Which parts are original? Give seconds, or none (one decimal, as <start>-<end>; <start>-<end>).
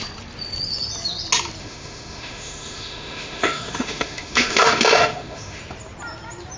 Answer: 0.0-1.6; 5.6-6.6